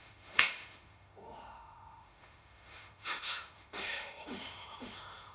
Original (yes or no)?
no